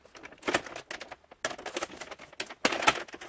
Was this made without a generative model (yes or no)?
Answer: yes